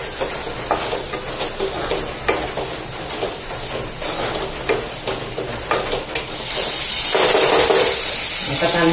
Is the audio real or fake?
real